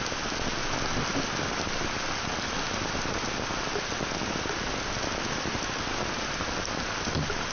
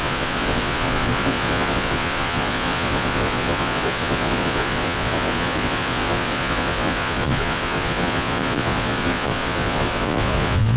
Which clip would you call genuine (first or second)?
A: first